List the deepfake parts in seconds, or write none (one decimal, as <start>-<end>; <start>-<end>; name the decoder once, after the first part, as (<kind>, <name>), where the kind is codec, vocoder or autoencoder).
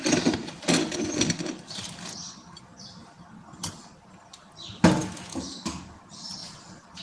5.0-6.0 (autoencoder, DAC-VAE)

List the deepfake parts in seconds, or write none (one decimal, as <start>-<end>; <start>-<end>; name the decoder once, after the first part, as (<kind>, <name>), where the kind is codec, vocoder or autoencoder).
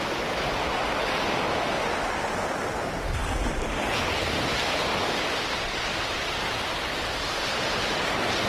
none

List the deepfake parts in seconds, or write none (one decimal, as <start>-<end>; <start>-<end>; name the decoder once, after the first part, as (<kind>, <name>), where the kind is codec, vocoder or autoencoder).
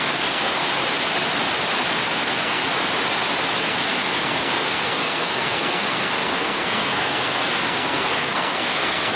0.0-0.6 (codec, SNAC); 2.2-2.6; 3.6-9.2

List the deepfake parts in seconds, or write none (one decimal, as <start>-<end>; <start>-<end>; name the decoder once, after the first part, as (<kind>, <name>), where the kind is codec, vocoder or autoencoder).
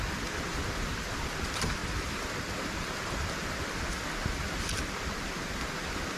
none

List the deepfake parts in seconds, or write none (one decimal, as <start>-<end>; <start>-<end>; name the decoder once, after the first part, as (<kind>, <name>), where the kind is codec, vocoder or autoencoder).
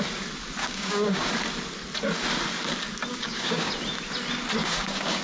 0.6-1.3 (codec, DAC); 3.1-3.7; 4.6-5.2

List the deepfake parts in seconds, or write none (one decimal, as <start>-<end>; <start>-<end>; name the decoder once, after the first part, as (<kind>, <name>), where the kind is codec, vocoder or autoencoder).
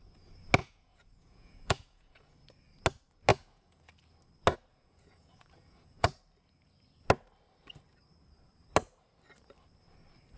0.6-2.3 (vocoder, Vocos); 3.3-3.9; 4.7-6.2